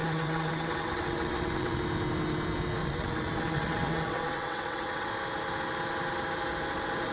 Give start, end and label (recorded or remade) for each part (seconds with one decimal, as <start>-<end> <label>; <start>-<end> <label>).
0.0-1.8 remade; 1.8-2.8 recorded; 2.8-5.1 remade; 5.1-7.1 recorded